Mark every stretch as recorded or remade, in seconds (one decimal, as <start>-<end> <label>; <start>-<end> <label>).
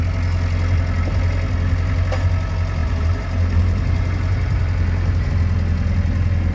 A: 0.0-2.8 recorded; 2.8-5.3 remade; 5.3-6.5 recorded